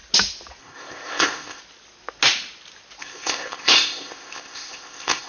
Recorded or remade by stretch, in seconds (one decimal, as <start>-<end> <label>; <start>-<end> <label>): 0.0-0.6 recorded; 0.6-1.6 remade; 1.6-3.0 recorded; 3.0-5.3 remade